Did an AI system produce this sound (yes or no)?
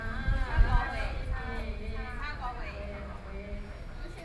no